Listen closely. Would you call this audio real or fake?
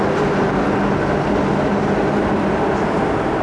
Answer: real